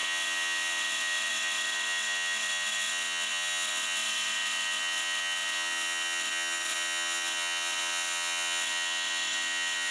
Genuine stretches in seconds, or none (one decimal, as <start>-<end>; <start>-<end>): none